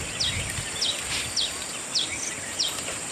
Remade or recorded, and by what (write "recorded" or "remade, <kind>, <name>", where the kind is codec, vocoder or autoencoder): recorded